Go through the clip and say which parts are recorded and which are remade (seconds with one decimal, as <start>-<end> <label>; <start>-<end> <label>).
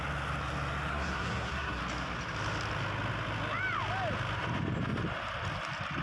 0.0-0.9 recorded; 0.9-1.8 remade; 1.8-6.0 recorded